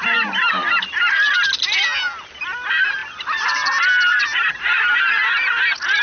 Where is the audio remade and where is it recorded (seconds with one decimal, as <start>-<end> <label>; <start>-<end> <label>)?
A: 0.0-1.3 remade; 1.3-3.0 recorded; 3.0-5.1 remade; 5.1-6.0 recorded